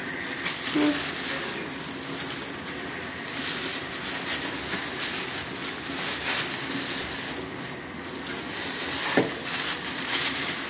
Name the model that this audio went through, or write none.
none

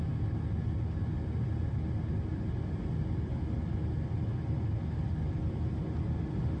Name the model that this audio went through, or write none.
none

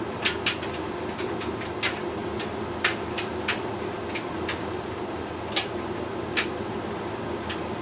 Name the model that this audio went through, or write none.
none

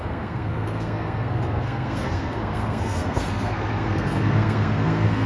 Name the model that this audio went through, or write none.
codec, SNAC